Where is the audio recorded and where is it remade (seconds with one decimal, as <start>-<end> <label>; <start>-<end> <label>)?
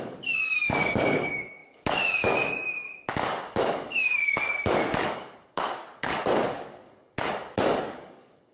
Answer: 0.0-8.5 remade